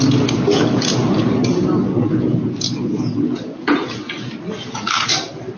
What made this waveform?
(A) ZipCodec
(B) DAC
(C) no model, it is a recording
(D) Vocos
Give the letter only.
C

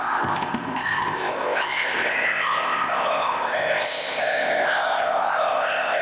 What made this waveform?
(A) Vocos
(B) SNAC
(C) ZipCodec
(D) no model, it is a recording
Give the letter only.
C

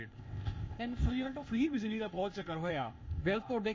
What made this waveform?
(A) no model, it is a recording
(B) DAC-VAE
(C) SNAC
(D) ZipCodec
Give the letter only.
D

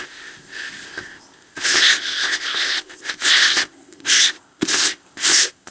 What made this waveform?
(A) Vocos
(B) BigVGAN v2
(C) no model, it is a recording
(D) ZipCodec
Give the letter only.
D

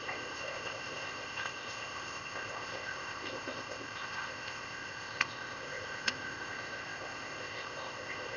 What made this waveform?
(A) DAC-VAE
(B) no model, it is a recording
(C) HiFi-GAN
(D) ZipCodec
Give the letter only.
D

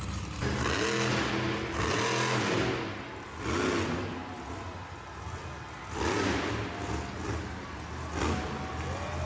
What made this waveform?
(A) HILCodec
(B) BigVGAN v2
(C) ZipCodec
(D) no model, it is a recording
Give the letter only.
D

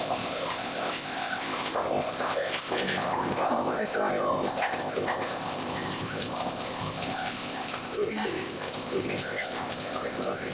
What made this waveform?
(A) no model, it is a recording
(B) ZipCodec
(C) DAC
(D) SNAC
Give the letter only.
B